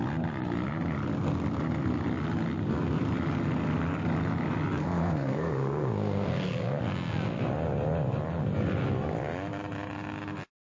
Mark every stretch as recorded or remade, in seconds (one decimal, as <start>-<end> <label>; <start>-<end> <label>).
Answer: 0.0-4.8 recorded; 4.8-6.8 remade; 6.8-10.7 recorded